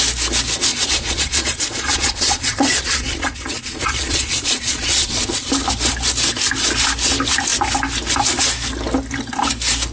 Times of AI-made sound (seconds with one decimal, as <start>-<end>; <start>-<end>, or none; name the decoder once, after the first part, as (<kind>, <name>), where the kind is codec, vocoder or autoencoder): 0.7-5.5 (vocoder, Vocos)